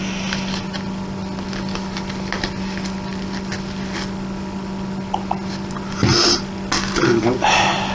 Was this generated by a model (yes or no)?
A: no